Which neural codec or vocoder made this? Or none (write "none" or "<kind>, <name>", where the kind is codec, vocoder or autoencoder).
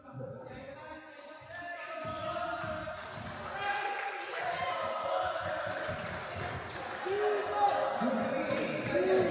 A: none